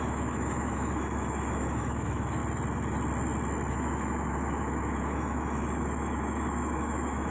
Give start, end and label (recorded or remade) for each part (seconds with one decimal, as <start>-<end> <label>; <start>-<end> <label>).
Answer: 0.0-2.4 remade; 2.4-3.7 recorded; 3.7-7.3 remade